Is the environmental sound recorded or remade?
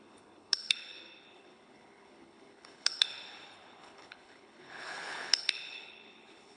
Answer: remade